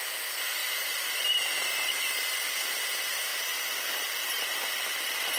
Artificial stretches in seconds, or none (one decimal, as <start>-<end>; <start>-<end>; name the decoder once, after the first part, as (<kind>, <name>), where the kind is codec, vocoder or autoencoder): 3.3-4.6 (vocoder, BigVGAN v2)